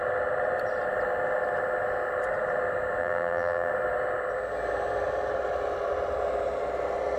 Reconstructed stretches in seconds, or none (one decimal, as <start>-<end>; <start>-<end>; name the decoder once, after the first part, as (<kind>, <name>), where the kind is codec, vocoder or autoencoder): 3.0-3.7 (vocoder, BigVGAN v2)